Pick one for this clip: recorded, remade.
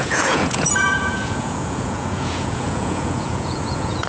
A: remade